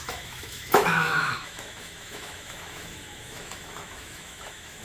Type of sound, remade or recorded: remade